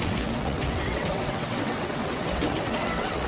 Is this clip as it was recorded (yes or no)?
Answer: no